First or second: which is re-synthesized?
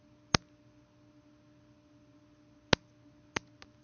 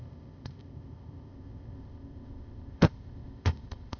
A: second